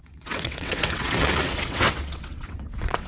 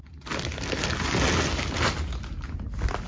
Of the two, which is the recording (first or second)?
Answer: second